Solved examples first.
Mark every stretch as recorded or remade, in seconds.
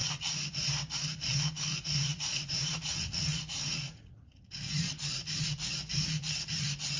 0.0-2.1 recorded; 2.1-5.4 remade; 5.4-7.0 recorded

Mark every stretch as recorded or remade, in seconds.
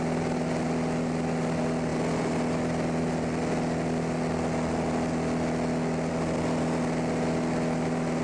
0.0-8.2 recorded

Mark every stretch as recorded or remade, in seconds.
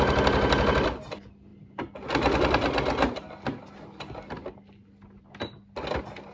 0.0-6.3 recorded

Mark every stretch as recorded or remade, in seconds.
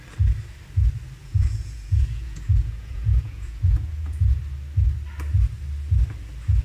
0.0-1.2 recorded; 1.2-4.4 remade; 4.4-6.6 recorded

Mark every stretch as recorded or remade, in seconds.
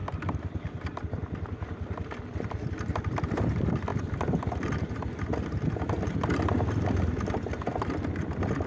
0.0-8.7 recorded